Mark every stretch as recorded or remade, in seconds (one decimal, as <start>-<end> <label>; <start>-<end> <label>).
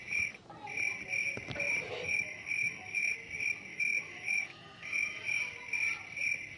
0.0-1.9 recorded; 1.9-3.1 remade; 3.1-3.7 recorded; 3.7-5.4 remade; 5.4-6.6 recorded